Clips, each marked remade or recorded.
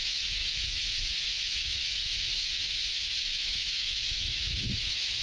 remade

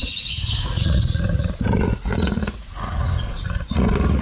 remade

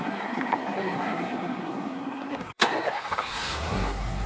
remade